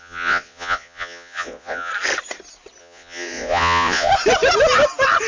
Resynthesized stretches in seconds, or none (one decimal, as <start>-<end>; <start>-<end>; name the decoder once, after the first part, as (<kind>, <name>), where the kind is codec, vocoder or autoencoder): 0.0-1.9 (vocoder, Vocos); 2.8-4.1